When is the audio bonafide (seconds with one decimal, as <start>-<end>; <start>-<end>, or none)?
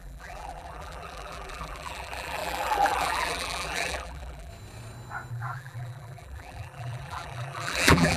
4.5-5.3